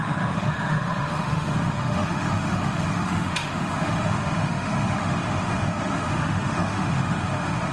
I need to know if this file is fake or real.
fake